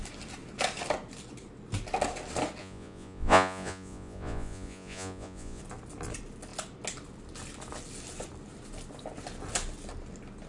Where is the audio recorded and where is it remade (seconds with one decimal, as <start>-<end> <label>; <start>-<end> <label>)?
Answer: 0.0-2.6 recorded; 2.6-5.6 remade; 5.6-10.5 recorded